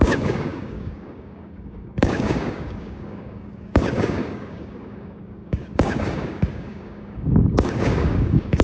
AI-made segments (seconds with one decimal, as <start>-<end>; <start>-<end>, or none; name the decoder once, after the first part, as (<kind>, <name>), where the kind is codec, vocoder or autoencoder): 0.0-8.6 (codec, DAC)